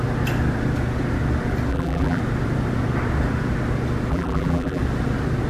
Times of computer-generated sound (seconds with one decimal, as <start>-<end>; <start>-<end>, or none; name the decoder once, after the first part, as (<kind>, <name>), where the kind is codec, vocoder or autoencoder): 1.7-2.2 (vocoder, BigVGAN v2); 4.1-4.8